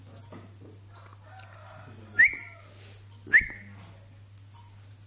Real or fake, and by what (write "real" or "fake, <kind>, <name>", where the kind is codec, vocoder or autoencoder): real